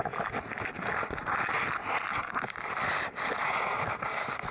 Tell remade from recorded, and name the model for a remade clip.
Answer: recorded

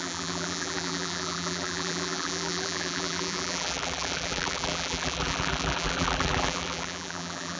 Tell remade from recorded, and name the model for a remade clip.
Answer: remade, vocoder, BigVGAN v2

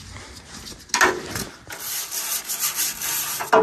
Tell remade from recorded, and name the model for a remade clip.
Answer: recorded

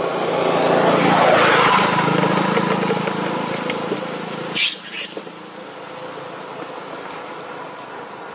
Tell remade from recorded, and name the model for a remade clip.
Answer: recorded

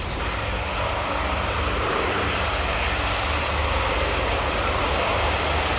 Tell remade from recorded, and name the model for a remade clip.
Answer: recorded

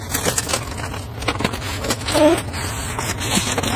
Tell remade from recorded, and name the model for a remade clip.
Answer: recorded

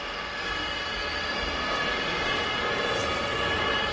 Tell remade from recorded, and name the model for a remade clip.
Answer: recorded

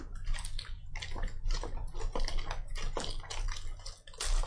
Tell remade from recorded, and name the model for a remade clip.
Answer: recorded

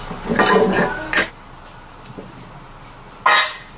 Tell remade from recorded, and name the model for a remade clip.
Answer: recorded